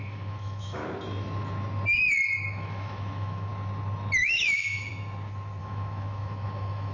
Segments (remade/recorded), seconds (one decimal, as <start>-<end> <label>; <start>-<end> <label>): 0.0-0.8 remade; 0.8-2.5 recorded; 2.5-3.5 remade; 3.5-4.2 recorded; 4.2-4.9 remade; 4.9-5.6 recorded; 5.6-6.9 remade